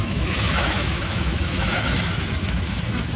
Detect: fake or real fake